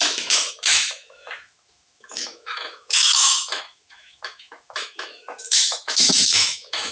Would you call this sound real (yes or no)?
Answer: no